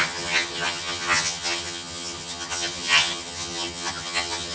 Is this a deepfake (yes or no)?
yes